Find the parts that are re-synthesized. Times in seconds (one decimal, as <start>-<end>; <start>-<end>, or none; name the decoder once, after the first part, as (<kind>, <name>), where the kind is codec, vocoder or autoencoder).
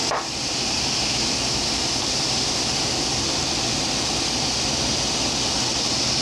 0.0-2.8 (vocoder, BigVGAN v2)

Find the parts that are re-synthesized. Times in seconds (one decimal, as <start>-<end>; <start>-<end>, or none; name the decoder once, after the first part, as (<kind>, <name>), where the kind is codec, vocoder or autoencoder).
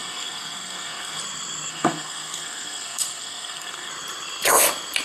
0.0-1.2 (codec, SNAC); 1.7-3.9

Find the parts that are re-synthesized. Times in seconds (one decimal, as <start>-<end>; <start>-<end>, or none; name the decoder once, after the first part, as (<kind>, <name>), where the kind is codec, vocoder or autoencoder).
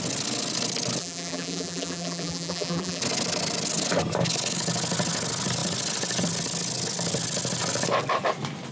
1.0-3.0 (vocoder, BigVGAN v2)